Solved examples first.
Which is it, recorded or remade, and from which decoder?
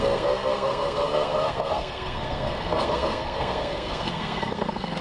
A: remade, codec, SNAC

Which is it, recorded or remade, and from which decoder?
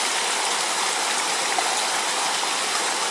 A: recorded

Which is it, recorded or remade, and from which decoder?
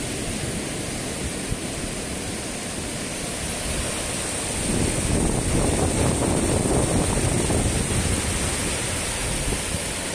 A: recorded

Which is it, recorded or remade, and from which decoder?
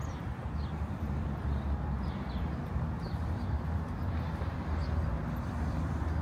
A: remade, vocoder, BigVGAN v2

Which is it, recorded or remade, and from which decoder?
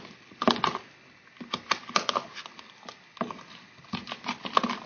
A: recorded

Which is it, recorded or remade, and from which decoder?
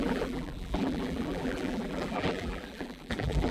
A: remade, vocoder, BigVGAN v2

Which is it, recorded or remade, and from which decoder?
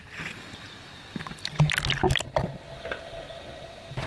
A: recorded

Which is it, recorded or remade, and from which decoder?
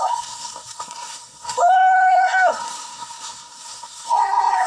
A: remade, codec, SNAC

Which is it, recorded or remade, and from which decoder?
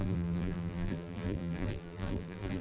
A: remade, vocoder, BigVGAN v2